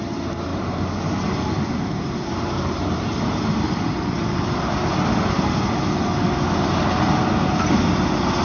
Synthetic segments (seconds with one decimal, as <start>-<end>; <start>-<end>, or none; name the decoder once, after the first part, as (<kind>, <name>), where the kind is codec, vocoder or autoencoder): 0.5-4.9 (vocoder, BigVGAN v2)